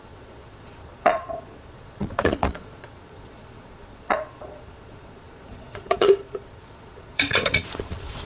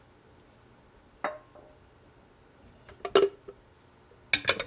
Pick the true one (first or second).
second